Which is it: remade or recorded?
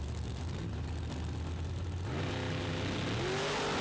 recorded